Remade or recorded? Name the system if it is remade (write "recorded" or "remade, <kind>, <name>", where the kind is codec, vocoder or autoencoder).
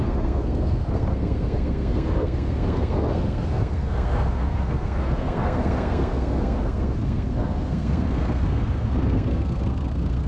remade, codec, SNAC